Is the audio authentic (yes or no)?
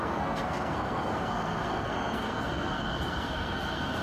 no